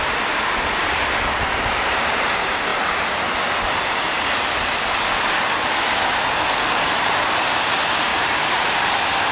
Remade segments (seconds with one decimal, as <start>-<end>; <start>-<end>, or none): 0.8-2.3; 8.1-8.7